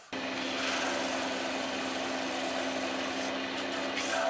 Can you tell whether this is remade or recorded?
recorded